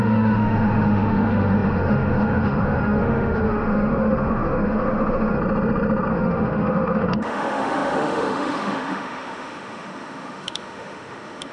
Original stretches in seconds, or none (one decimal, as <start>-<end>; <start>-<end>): 5.4-6.1